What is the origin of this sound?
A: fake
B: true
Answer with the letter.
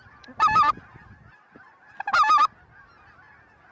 B